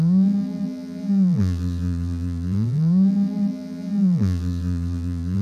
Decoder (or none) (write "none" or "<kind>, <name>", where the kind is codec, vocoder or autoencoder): vocoder, BigVGAN v2